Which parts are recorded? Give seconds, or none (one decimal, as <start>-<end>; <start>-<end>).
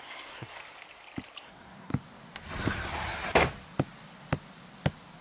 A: 0.6-1.4; 1.9-5.2